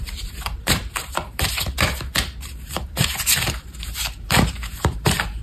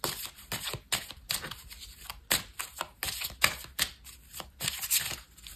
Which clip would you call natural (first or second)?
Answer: second